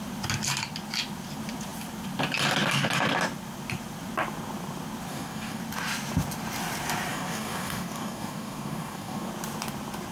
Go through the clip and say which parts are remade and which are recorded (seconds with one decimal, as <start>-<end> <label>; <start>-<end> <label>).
0.0-5.1 recorded; 5.1-5.6 remade; 5.6-7.1 recorded; 7.1-9.3 remade; 9.3-10.1 recorded